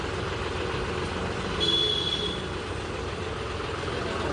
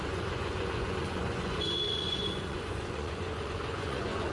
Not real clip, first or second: second